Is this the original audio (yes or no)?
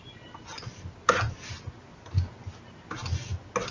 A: yes